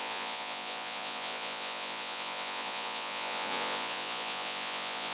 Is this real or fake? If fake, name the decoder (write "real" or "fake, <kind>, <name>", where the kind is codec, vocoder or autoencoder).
fake, vocoder, Vocos